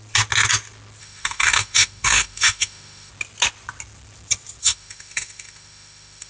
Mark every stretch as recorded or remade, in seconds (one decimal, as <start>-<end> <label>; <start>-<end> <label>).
0.0-1.0 recorded; 1.0-3.1 remade; 3.1-4.6 recorded; 4.6-6.3 remade